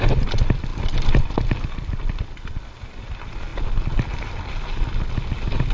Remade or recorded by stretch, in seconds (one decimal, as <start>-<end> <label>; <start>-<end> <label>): 0.0-5.7 recorded